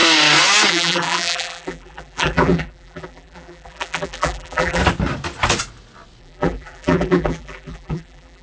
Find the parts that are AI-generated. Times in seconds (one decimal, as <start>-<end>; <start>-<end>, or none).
0.7-4.8; 6.2-8.4